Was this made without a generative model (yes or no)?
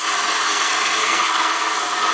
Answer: no